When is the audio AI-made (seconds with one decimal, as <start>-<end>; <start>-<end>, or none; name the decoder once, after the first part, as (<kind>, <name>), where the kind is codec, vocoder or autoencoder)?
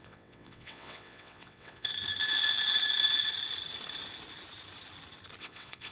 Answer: 0.0-1.9 (vocoder, WaveNeXt); 5.4-5.9